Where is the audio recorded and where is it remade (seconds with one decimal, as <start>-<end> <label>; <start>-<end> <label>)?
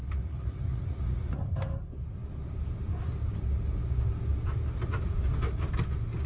0.0-1.4 remade; 1.4-6.3 recorded